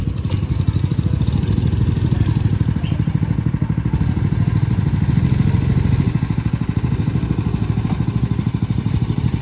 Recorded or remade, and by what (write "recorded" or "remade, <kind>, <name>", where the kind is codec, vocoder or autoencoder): recorded